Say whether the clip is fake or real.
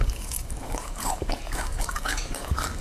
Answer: fake